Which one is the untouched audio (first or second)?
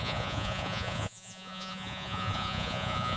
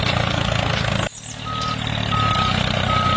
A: second